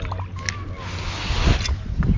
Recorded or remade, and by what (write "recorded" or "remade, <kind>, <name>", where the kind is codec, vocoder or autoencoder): recorded